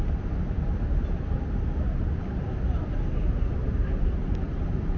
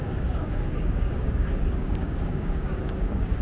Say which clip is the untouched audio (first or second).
first